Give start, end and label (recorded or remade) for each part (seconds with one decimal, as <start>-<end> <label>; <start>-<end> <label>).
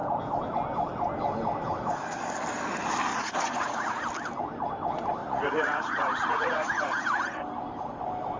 0.0-3.1 recorded; 3.1-4.0 remade; 4.0-5.2 recorded; 5.2-7.4 remade; 7.4-8.4 recorded